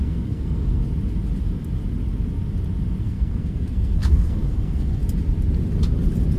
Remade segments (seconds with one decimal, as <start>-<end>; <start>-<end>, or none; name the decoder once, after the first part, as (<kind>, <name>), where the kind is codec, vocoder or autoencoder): 0.0-0.8 (codec, SNAC); 3.0-5.0